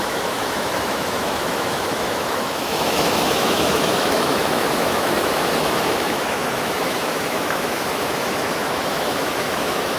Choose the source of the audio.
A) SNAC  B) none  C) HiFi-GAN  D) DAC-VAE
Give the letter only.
D